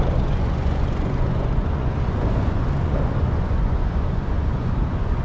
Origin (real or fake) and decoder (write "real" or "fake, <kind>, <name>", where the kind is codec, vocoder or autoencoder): fake, vocoder, Vocos